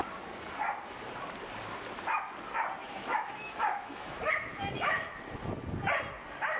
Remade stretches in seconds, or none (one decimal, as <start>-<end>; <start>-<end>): 2.8-5.2